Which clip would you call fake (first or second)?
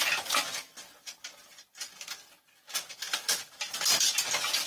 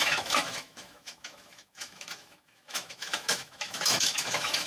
second